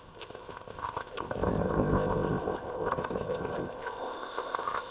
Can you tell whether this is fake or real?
fake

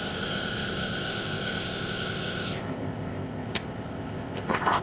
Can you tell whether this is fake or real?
fake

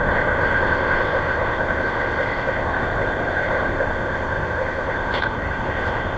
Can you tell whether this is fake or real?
fake